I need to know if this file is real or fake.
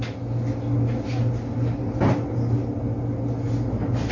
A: real